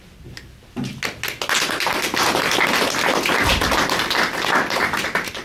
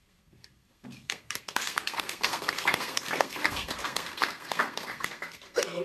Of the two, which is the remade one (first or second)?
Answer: second